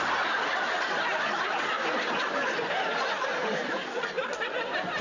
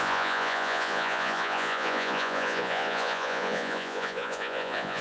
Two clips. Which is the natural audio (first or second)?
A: first